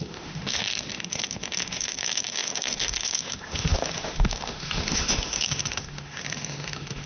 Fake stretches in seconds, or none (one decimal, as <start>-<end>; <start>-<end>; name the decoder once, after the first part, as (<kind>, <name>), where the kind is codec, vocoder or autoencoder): 0.0-7.1 (autoencoder, DAC-VAE)

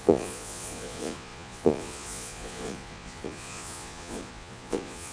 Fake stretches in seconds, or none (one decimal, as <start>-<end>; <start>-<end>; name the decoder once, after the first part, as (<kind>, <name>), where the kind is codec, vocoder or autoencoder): 0.0-5.1 (vocoder, Vocos)

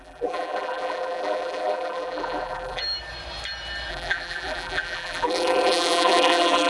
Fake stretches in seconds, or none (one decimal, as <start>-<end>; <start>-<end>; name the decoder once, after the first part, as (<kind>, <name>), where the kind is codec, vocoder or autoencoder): 0.0-2.8 (vocoder, BigVGAN v2); 3.9-6.7

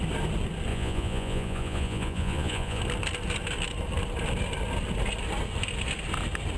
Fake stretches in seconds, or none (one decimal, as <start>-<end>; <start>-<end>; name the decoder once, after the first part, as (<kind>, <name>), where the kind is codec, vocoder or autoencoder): 0.7-2.8 (vocoder, Vocos)

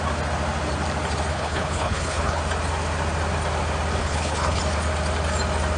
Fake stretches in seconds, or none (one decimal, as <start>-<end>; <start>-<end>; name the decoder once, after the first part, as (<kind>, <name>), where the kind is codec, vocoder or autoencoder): 1.3-2.4 (codec, HILCodec); 4.0-4.6

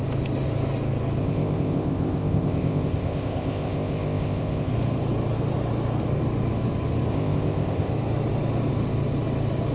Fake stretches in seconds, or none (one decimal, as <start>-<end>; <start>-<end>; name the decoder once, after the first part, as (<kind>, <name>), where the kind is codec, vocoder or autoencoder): 1.2-4.7 (codec, ZipCodec); 7.1-7.9

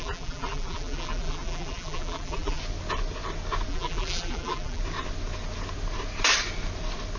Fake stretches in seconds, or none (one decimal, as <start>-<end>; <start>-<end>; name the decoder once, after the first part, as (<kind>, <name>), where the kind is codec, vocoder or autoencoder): 0.0-2.6 (vocoder, BigVGAN v2); 3.7-4.8